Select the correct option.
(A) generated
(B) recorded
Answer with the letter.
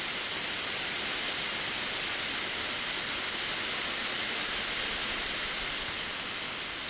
B